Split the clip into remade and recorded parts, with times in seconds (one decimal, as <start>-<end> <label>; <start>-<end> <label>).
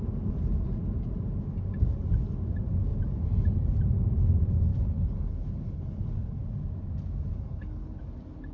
0.0-4.7 recorded; 4.7-6.4 remade; 6.4-7.3 recorded; 7.3-8.0 remade; 8.0-8.5 recorded